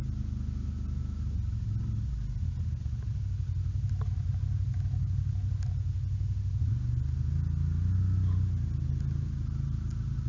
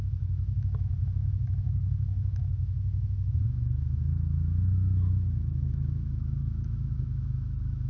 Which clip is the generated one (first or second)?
second